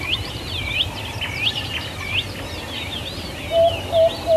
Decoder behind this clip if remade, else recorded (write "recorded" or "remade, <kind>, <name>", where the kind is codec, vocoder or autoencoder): recorded